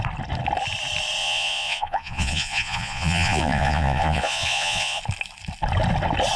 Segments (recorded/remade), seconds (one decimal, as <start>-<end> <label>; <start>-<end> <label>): 0.0-1.2 recorded; 1.2-5.0 remade; 5.0-6.4 recorded